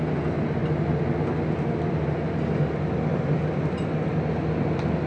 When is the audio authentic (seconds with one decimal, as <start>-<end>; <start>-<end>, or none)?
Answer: 0.0-5.1